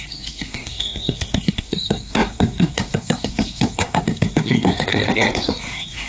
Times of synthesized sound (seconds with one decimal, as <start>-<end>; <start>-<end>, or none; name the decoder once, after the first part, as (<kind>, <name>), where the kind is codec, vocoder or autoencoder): 0.0-6.1 (codec, SNAC)